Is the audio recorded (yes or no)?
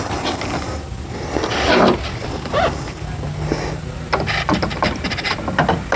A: yes